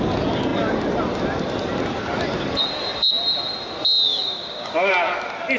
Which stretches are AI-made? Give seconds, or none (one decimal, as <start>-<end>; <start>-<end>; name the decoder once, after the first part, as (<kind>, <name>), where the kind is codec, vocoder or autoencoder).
4.1-4.9 (codec, DAC)